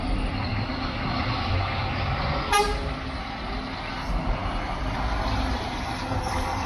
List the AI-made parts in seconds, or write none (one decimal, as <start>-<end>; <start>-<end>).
0.0-0.5; 4.5-6.7